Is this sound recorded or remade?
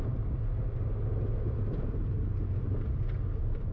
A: recorded